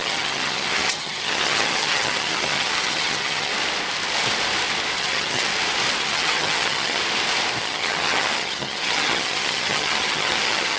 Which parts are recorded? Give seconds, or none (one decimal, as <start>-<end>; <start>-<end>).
3.5-5.0; 5.5-6.0; 7.0-7.6